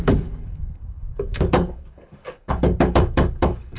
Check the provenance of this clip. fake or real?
fake